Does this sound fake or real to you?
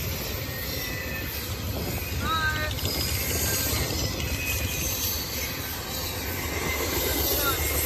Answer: real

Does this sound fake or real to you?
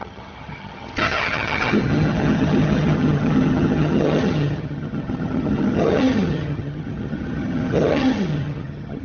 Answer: fake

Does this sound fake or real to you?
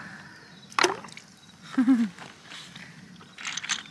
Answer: real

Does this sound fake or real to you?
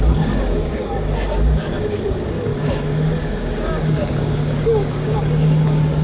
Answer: fake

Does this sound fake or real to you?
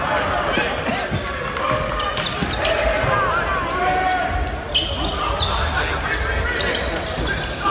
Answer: real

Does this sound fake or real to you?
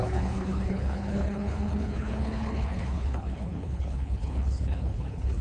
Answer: fake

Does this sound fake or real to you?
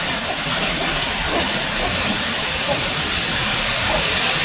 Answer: real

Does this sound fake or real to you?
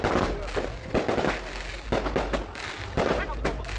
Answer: real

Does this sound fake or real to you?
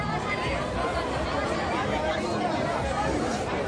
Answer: real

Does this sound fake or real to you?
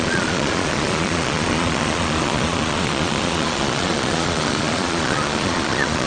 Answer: fake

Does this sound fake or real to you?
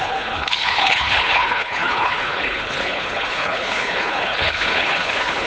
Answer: fake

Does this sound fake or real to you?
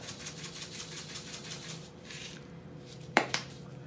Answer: fake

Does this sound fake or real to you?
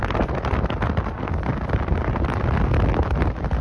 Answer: real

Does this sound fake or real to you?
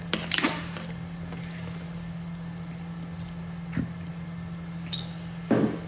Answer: real